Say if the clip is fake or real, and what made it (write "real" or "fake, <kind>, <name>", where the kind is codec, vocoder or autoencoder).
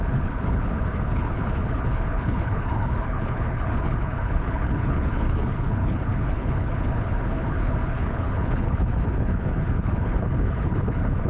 fake, codec, HILCodec